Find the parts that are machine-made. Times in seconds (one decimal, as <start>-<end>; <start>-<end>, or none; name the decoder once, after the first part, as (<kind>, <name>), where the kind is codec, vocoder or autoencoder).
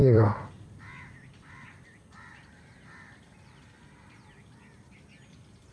0.0-5.7 (vocoder, BigVGAN v2)